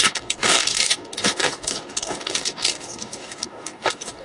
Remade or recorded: remade